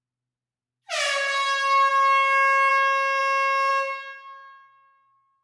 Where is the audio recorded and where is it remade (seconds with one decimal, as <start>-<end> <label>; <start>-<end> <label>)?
0.0-5.4 recorded

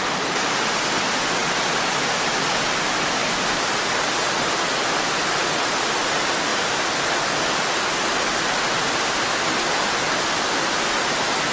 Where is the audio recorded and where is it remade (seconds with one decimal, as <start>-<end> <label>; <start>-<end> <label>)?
0.0-11.5 recorded

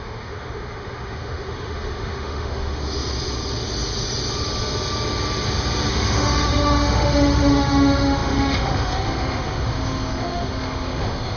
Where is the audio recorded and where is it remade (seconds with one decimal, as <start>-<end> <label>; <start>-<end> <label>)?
0.0-2.8 remade; 2.8-5.9 recorded; 5.9-11.4 remade